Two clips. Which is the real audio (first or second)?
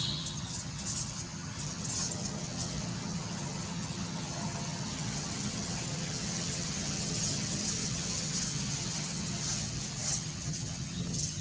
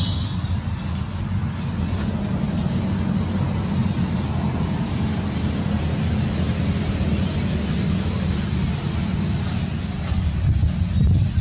second